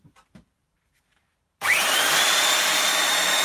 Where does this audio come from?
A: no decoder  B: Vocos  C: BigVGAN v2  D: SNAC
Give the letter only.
C